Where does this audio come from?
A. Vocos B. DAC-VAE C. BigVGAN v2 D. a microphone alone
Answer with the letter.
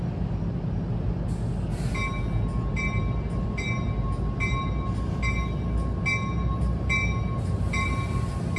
D